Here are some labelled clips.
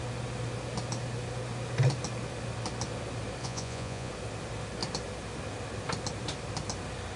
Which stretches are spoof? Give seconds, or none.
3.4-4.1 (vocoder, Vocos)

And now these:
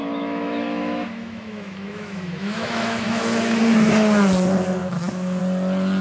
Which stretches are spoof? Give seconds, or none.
0.0-3.6 (autoencoder, DAC-VAE); 4.8-5.4

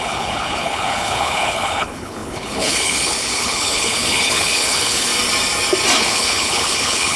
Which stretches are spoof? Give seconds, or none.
0.0-5.1 (codec, HILCodec); 6.0-7.2

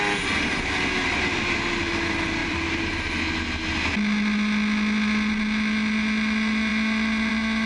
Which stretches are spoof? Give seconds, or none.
2.4-3.1 (vocoder, BigVGAN v2)

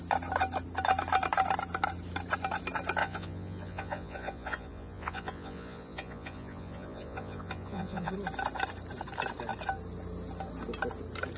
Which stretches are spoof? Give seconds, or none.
3.0-8.1 (vocoder, Vocos)

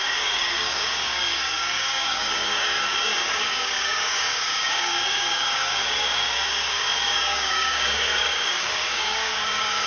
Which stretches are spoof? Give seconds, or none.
0.0-9.9 (codec, DAC)

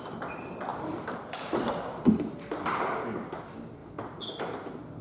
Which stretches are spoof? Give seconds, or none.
none

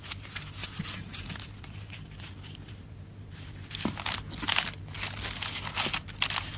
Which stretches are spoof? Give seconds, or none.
0.6-3.7 (vocoder, BigVGAN v2)